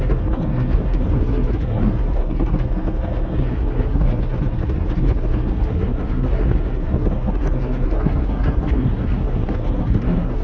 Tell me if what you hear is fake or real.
fake